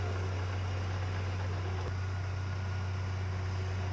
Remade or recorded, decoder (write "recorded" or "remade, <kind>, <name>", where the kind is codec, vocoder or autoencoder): recorded